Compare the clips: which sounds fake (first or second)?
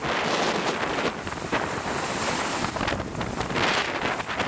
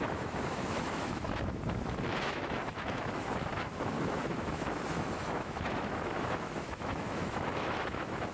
second